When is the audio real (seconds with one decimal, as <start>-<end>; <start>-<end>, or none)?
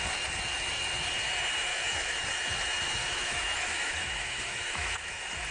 0.0-1.7; 2.2-3.0; 5.1-5.5